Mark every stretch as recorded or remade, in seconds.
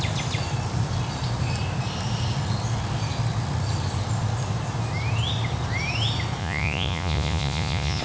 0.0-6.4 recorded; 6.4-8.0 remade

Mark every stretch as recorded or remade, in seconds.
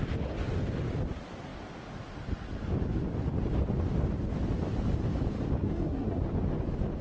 0.0-5.6 recorded; 5.6-6.2 remade; 6.2-7.0 recorded